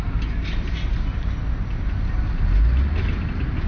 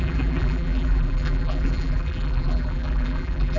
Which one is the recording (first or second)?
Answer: first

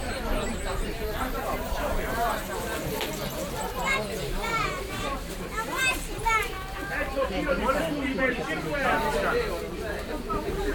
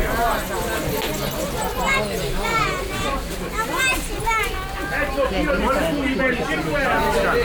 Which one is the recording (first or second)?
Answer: second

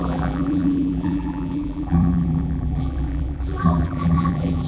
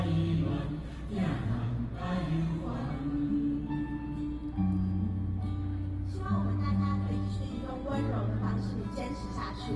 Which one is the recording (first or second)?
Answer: second